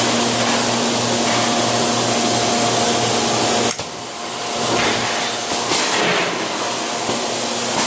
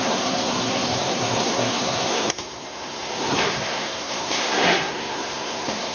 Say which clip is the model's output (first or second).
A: second